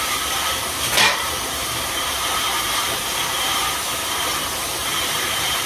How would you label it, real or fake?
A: fake